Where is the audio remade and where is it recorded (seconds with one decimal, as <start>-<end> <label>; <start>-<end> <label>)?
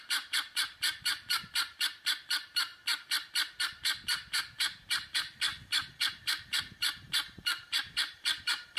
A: 0.0-2.7 remade; 2.7-3.6 recorded; 3.6-5.5 remade; 5.5-6.0 recorded; 6.0-8.8 remade